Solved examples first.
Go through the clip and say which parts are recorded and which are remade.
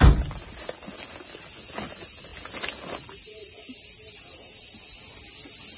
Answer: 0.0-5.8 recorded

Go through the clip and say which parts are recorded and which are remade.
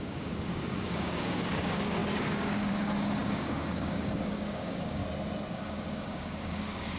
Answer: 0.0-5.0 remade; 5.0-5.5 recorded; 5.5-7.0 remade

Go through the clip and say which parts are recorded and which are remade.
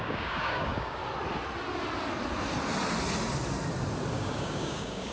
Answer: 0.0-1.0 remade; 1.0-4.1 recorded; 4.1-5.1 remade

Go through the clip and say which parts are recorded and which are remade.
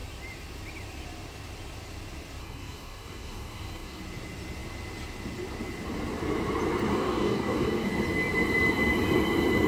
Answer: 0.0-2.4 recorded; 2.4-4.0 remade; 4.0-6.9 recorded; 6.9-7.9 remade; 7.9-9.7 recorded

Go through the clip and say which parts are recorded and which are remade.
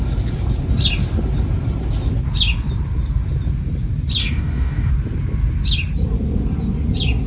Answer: 0.0-4.2 recorded; 4.2-4.9 remade; 4.9-7.3 recorded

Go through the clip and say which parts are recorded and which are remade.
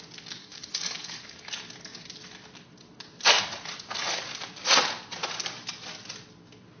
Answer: 0.0-0.4 recorded; 0.4-1.5 remade; 1.5-6.8 recorded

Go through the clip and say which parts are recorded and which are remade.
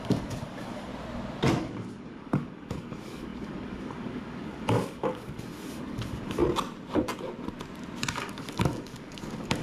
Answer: 0.0-0.9 remade; 0.9-1.6 recorded; 1.6-6.4 remade; 6.4-8.1 recorded; 8.1-9.6 remade